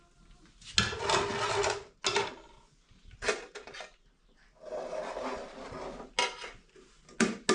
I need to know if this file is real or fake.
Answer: real